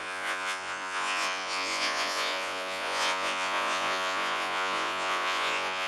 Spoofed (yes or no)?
yes